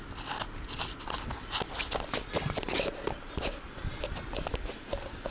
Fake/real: real